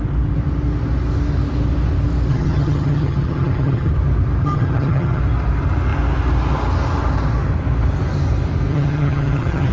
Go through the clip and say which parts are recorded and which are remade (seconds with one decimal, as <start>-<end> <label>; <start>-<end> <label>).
0.0-2.3 recorded; 2.3-3.9 remade; 3.9-4.4 recorded; 4.4-5.2 remade; 5.2-8.7 recorded; 8.7-9.7 remade